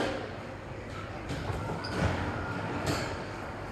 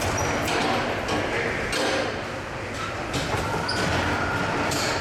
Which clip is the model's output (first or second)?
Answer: first